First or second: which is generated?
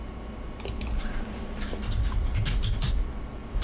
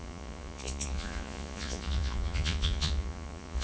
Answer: second